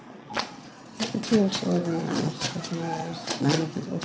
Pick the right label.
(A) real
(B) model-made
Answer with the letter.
B